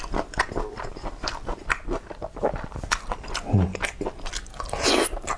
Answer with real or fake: real